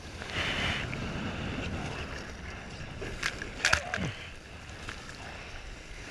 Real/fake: real